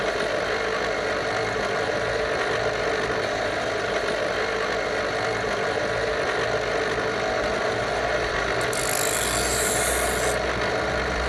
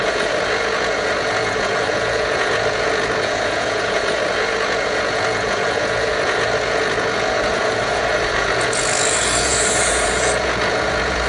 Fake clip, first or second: second